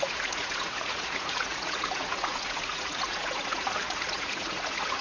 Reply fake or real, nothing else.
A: fake